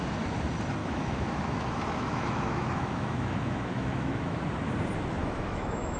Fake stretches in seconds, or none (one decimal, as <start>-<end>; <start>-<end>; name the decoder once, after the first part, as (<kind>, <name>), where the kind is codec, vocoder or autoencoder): 0.8-4.4 (autoencoder, DAC-VAE); 5.2-6.0